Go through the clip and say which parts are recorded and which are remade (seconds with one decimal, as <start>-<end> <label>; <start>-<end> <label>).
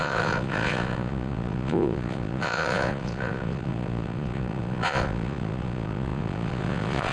0.0-7.1 remade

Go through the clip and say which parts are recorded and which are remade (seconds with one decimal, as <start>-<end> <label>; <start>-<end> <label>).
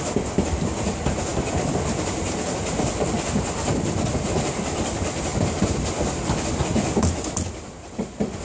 0.0-8.4 recorded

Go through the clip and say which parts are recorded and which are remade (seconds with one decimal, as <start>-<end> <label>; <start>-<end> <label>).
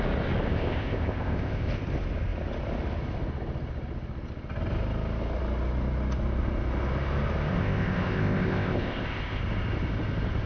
0.0-0.5 recorded; 0.5-1.7 remade; 1.7-7.5 recorded; 7.5-9.4 remade; 9.4-10.5 recorded